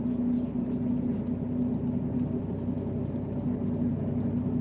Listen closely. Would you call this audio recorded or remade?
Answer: recorded